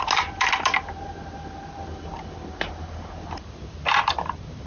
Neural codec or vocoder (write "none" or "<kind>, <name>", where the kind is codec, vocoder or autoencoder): none